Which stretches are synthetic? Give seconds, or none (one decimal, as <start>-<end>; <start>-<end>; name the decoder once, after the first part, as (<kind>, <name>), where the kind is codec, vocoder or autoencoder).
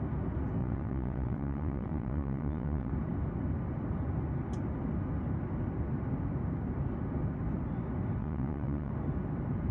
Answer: 0.6-2.9 (vocoder, WaveNeXt); 8.2-8.9